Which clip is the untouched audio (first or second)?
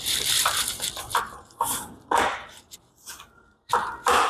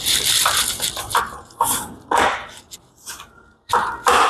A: second